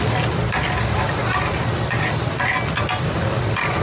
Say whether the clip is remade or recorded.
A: recorded